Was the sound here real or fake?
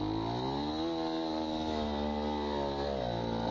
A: real